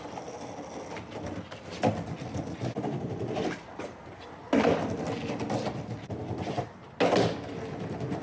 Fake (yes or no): no